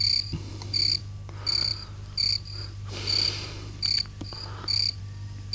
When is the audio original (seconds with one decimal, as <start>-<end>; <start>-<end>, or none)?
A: 0.0-1.7; 5.0-5.5

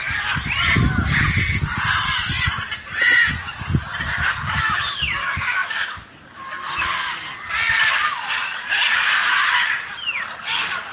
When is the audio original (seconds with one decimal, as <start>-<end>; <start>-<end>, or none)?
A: 0.0-10.9

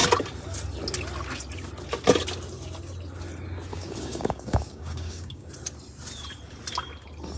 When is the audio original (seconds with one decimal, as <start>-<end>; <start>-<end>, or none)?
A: 0.0-3.7; 5.5-7.4

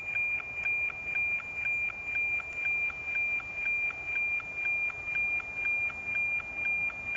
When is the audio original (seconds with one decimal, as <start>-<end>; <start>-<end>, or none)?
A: 0.0-7.2

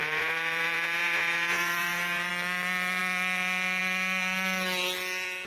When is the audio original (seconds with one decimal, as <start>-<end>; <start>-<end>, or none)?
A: 2.3-5.5

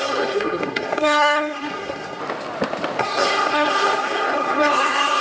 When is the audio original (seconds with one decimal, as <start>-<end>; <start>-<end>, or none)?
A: 2.2-3.0

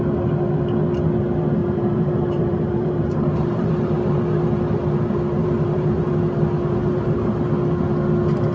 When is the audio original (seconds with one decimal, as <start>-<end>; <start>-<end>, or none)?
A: 0.0-1.6; 4.2-5.4; 6.1-6.8; 7.5-8.5